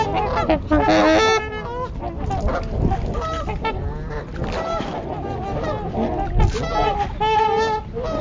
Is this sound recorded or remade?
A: recorded